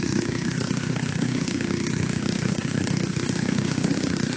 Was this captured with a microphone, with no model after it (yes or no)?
no